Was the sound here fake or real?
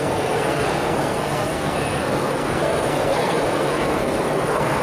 fake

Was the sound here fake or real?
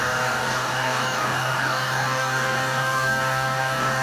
fake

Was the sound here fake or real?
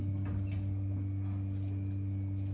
real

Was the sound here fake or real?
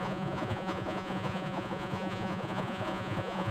fake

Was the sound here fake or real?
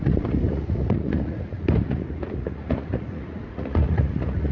fake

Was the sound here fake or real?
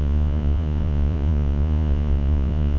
fake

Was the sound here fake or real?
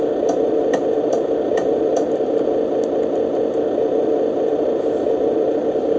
real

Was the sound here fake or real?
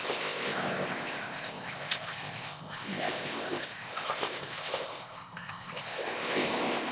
fake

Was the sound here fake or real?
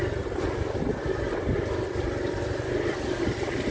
fake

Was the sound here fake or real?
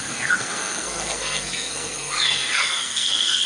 fake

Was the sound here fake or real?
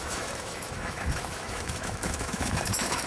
fake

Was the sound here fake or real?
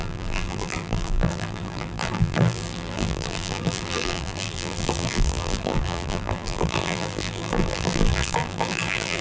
fake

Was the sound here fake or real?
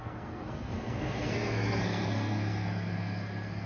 fake